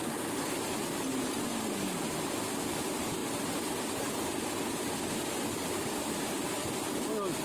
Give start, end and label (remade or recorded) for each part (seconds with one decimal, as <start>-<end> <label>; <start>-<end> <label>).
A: 0.0-1.5 recorded; 1.5-2.3 remade; 2.3-7.4 recorded